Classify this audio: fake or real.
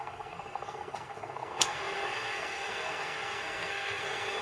fake